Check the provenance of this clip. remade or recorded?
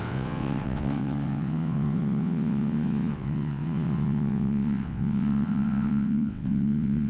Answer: remade